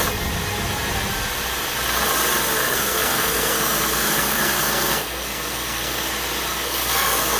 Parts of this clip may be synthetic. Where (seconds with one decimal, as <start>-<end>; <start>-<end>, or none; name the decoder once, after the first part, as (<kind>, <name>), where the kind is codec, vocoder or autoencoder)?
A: 2.6-6.1 (codec, SNAC); 6.5-7.4